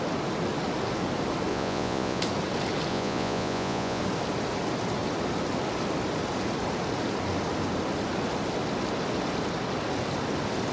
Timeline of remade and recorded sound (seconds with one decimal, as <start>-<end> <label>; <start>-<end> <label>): 0.0-1.5 recorded; 1.5-2.2 remade; 2.2-2.9 recorded; 2.9-4.0 remade; 4.0-10.7 recorded